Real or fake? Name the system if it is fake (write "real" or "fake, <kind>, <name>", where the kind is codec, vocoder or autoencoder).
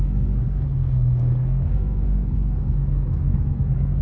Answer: fake, codec, SNAC